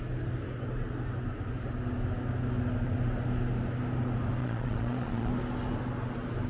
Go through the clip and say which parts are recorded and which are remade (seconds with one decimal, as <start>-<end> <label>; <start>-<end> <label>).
0.0-4.4 recorded; 4.4-5.3 remade; 5.3-6.5 recorded